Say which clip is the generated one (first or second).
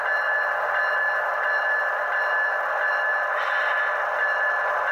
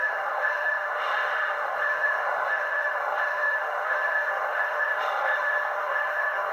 second